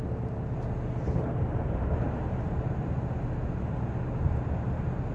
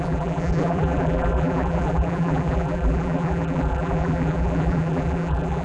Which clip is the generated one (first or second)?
second